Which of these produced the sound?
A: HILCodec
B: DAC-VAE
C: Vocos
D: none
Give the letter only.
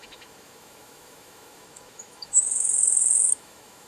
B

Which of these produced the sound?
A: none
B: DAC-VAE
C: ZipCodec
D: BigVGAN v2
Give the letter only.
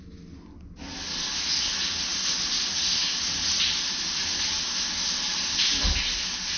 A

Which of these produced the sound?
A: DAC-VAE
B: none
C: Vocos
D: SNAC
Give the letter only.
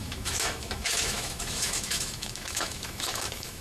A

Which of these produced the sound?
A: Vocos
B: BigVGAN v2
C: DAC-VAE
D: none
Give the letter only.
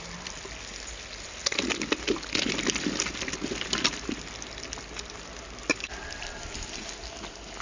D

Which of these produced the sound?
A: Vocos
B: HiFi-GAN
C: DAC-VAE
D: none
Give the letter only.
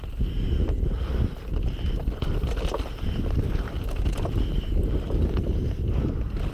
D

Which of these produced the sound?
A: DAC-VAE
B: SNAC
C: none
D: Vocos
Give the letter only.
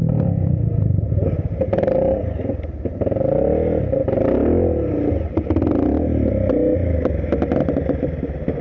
C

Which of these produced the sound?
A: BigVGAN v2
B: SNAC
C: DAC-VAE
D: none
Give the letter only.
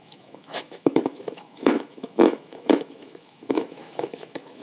C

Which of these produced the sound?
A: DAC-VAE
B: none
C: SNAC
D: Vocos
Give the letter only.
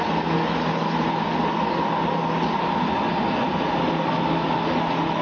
B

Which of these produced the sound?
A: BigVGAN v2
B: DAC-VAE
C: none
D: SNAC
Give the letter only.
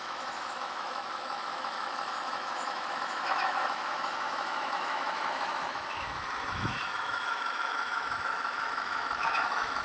B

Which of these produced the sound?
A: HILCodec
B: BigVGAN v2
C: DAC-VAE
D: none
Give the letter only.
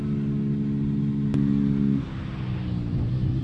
D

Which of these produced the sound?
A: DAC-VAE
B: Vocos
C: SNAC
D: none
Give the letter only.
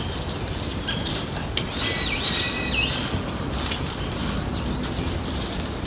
D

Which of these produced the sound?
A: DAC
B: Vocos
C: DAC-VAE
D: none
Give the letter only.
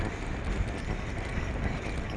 D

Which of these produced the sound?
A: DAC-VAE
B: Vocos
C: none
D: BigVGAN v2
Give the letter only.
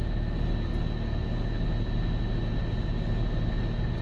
C